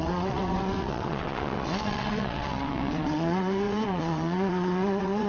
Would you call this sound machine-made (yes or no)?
yes